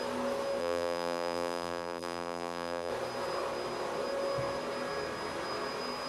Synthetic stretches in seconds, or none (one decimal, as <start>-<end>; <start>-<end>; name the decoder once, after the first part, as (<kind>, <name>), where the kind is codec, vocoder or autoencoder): 0.6-2.9 (vocoder, BigVGAN v2)